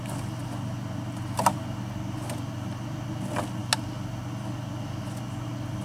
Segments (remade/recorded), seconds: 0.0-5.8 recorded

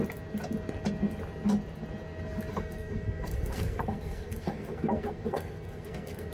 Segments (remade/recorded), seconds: 0.0-2.5 recorded; 2.5-6.3 remade

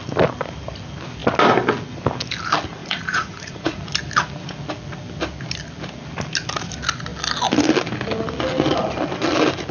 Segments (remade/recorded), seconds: 0.0-2.8 recorded; 2.8-3.8 remade; 3.8-9.7 recorded

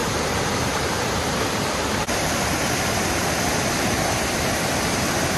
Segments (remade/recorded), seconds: 0.0-5.4 remade

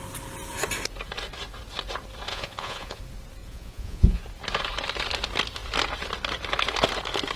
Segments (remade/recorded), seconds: 0.0-2.3 recorded; 2.3-3.0 remade; 3.0-3.4 recorded; 3.4-4.2 remade; 4.2-7.4 recorded